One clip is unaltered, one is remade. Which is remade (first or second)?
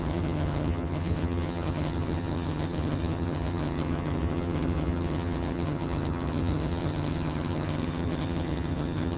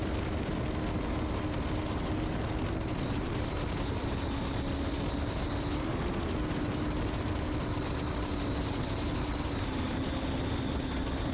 first